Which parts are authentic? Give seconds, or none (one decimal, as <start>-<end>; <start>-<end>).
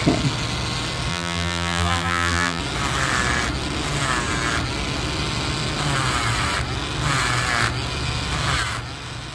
0.0-1.1; 2.6-9.3